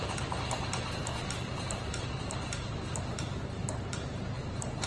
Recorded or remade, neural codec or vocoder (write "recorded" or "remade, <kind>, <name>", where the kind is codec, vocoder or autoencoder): remade, vocoder, BigVGAN v2